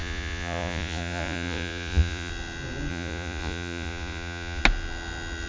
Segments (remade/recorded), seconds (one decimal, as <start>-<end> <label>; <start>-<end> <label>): 0.0-2.3 remade; 2.3-2.9 recorded; 2.9-4.6 remade; 4.6-5.5 recorded